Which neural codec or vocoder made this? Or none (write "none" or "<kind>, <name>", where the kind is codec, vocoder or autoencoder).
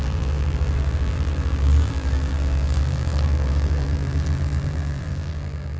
vocoder, BigVGAN v2